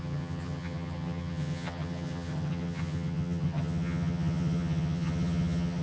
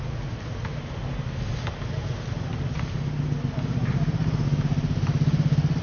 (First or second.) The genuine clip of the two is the second